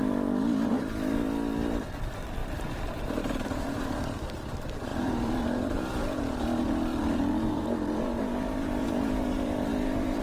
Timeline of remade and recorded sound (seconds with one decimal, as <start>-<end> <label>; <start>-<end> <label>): 0.0-2.4 recorded; 2.4-3.8 remade; 3.8-4.9 recorded; 4.9-6.2 remade; 6.2-6.9 recorded; 6.9-10.2 remade